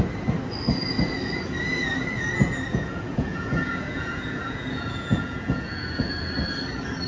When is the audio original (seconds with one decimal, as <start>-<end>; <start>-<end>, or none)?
0.0-2.7; 6.3-7.1

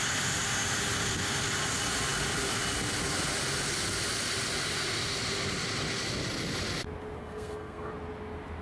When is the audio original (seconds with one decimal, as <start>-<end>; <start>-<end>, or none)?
0.0-7.2; 7.9-8.6